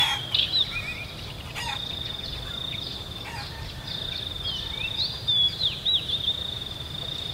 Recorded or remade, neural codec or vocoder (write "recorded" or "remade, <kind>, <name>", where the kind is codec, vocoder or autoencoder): recorded